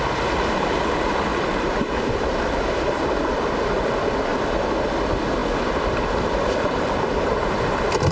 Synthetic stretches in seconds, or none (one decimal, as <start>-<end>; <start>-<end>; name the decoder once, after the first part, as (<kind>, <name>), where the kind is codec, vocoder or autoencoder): 1.3-3.5 (vocoder, BigVGAN v2); 5.4-6.9